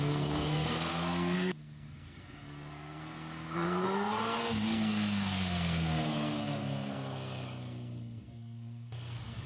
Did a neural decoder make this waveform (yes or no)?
yes